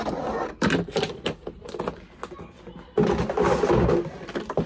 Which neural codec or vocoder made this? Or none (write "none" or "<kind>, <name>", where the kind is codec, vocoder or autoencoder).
none